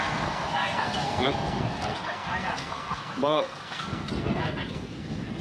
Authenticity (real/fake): fake